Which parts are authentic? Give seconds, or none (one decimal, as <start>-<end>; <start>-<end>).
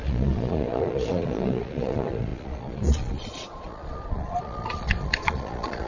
none